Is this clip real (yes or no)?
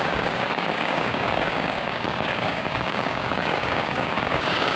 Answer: no